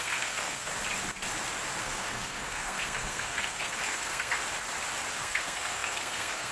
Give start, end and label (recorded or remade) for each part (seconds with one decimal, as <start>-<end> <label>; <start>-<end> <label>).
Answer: 0.0-0.7 remade; 0.7-1.8 recorded; 1.8-4.4 remade; 4.4-5.1 recorded; 5.1-6.5 remade